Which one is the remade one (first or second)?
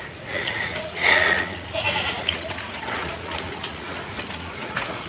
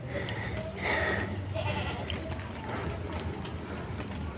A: first